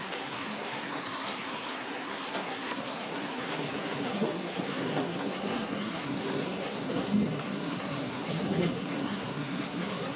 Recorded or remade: remade